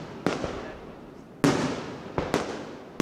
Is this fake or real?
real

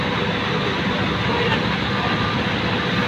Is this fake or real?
real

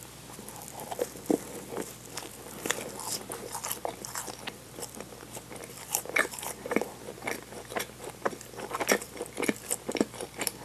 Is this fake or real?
fake